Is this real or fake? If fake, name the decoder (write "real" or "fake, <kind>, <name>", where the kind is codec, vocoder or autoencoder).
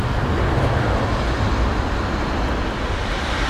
real